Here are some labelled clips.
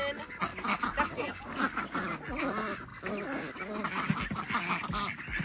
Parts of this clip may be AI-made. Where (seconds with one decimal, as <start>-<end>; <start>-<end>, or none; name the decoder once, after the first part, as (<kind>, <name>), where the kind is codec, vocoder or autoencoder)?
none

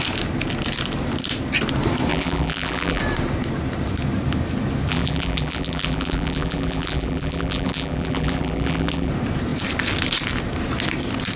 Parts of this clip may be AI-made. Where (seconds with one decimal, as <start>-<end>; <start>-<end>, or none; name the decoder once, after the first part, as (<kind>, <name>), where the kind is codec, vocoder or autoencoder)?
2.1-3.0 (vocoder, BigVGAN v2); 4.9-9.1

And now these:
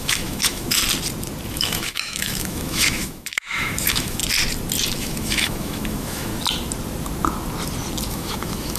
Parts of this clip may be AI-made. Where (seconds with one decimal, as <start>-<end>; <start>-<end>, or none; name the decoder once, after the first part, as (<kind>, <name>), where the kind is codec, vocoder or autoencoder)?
0.0-0.8 (autoencoder, DAC-VAE); 1.5-4.2; 5.0-6.3; 8.1-8.8

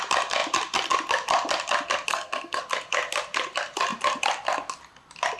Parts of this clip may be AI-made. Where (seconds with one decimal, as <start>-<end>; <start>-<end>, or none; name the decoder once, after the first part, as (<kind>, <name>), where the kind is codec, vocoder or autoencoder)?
2.1-2.6 (codec, SNAC)